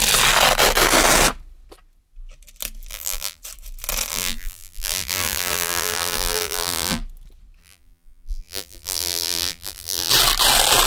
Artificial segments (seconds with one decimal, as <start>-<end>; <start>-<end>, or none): 2.9-3.4; 4.1-7.0; 7.6-10.1